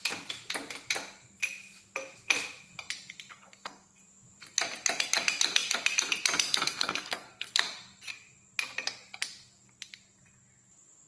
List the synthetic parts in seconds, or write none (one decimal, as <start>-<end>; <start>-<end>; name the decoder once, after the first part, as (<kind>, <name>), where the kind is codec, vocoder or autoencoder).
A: 3.3-4.0 (codec, SNAC); 6.5-7.6